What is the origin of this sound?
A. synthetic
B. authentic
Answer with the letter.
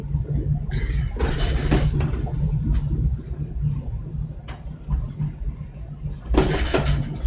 B